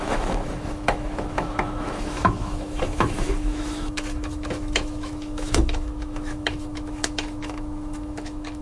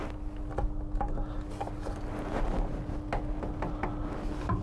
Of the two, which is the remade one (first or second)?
first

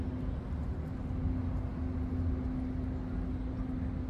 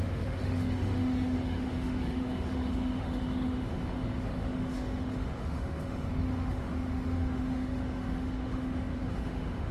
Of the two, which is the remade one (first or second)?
second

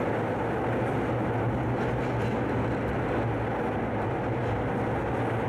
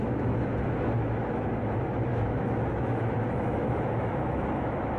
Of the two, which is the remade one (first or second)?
second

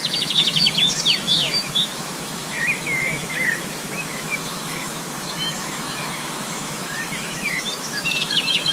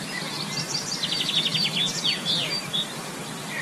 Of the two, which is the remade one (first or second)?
first